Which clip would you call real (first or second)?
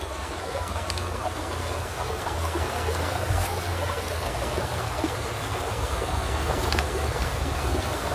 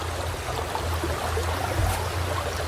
second